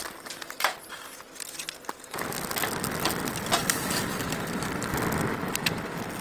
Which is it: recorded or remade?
recorded